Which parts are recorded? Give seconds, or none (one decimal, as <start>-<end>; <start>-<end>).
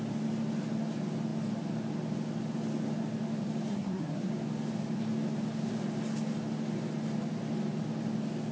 0.0-3.7; 4.3-8.5